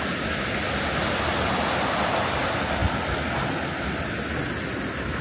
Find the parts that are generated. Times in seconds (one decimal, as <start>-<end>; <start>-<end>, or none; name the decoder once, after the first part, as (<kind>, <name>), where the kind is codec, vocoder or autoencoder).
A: none